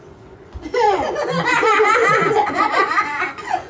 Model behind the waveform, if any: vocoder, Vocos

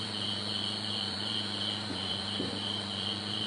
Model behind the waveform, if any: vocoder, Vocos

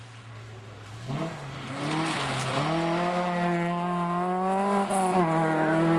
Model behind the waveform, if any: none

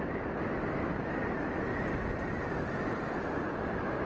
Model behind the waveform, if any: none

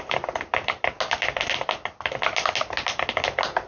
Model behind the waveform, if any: none